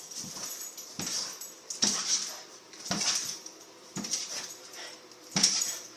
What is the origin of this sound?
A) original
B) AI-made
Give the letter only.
B